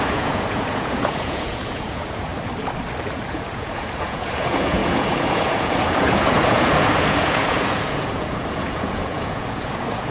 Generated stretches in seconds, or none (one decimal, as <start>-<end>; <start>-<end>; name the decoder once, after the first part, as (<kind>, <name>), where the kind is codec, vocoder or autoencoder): 0.0-2.3 (vocoder, Vocos); 3.0-10.1

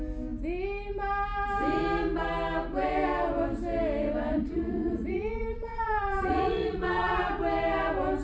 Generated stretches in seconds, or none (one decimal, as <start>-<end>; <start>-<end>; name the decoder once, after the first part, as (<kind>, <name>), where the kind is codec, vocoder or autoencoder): 4.3-7.2 (vocoder, Vocos)

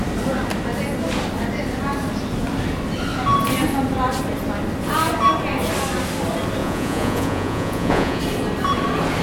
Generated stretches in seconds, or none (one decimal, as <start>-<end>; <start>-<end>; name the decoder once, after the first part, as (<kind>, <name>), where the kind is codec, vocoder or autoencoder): 6.6-8.2 (vocoder, Vocos)

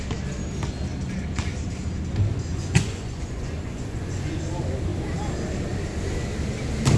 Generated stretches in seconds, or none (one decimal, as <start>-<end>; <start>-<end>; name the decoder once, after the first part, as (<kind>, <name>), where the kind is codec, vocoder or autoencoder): 2.5-4.4 (vocoder, Vocos)

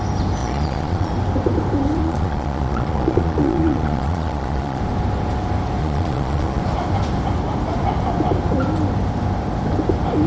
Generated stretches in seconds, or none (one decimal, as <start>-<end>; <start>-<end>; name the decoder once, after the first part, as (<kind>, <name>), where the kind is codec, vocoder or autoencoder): 0.4-1.1 (vocoder, Vocos); 2.0-4.8; 5.8-6.6

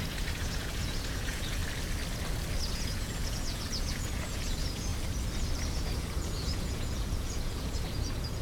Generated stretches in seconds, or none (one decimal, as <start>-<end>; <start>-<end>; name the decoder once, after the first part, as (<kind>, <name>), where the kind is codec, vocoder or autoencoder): 0.0-1.6 (vocoder, Vocos); 2.7-4.9; 5.7-8.4

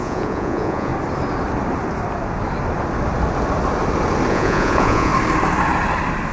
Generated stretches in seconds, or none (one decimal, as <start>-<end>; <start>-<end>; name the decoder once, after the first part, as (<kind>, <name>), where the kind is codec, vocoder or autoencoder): 0.0-0.9 (vocoder, Vocos); 4.3-5.1